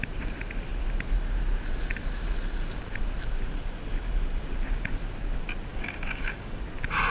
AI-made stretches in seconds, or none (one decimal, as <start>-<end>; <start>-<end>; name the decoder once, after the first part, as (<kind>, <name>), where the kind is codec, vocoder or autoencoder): 5.7-6.6 (codec, DAC)